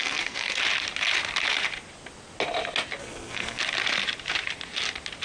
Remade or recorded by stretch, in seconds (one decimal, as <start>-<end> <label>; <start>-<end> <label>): 0.0-0.6 remade; 0.6-3.0 recorded; 3.0-3.6 remade; 3.6-5.2 recorded